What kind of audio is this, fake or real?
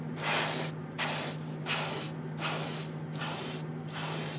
real